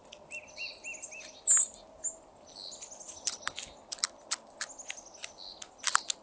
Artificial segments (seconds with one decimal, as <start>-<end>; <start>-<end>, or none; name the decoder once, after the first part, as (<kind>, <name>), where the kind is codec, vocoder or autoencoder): none